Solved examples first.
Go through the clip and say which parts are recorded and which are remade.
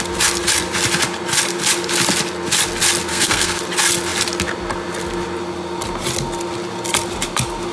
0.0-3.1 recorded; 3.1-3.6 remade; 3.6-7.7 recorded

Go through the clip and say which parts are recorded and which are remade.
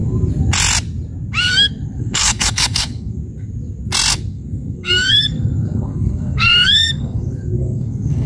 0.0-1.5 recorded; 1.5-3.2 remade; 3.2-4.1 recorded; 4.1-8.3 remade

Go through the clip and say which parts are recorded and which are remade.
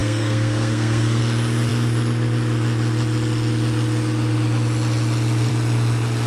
0.0-1.2 remade; 1.2-6.3 recorded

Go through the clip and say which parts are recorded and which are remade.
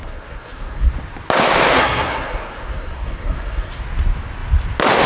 0.0-0.9 remade; 0.9-1.7 recorded; 1.7-3.8 remade; 3.8-5.1 recorded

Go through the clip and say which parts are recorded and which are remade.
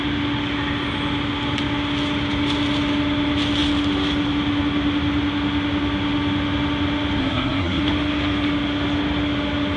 0.0-7.2 recorded; 7.2-7.8 remade; 7.8-9.8 recorded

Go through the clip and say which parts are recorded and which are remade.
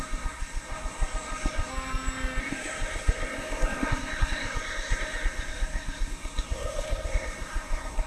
0.0-1.7 remade; 1.7-2.4 recorded; 2.4-8.1 remade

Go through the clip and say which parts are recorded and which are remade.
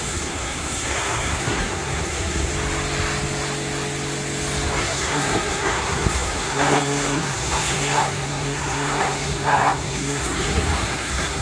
0.0-2.5 remade; 2.5-4.8 recorded; 4.8-11.4 remade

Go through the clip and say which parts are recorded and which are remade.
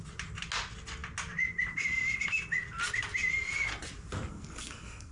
0.0-4.3 recorded; 4.3-5.1 remade